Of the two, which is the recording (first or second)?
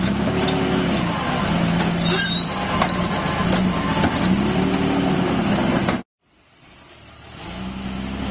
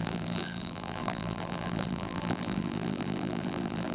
first